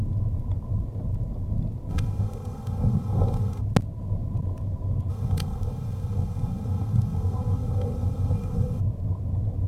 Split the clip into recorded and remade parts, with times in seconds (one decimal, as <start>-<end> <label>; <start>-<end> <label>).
0.0-1.9 recorded; 1.9-3.6 remade; 3.6-5.1 recorded; 5.1-8.8 remade; 8.8-9.7 recorded